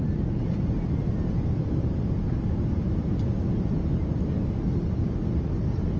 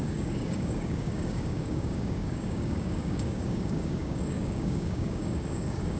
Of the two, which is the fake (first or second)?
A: second